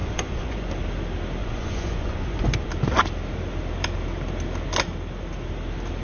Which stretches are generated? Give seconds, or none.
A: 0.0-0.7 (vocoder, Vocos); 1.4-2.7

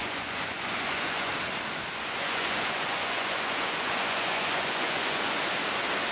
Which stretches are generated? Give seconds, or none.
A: 0.0-1.3 (vocoder, Vocos); 2.0-5.4

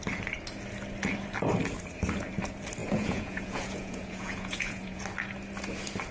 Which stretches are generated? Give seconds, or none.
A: 2.8-5.0 (vocoder, Vocos)

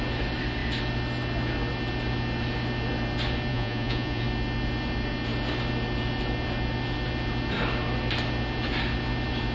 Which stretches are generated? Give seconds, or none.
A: 3.5-4.2 (vocoder, Vocos)

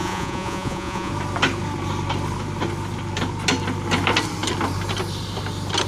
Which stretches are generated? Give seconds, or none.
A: 0.0-1.1 (vocoder, Vocos)

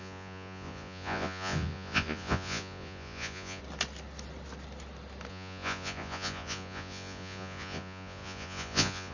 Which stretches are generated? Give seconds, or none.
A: 0.0-3.6 (vocoder, Vocos); 5.3-9.1

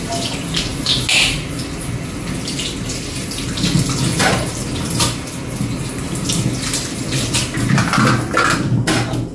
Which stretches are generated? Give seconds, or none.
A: none

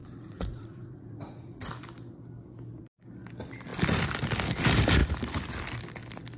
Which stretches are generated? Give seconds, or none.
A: 0.0-1.7 (vocoder, Vocos)